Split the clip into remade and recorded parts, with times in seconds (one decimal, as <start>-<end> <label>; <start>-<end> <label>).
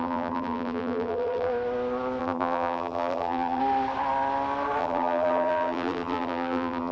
0.0-1.5 remade; 1.5-2.2 recorded; 2.2-3.6 remade; 3.6-4.8 recorded; 4.8-6.9 remade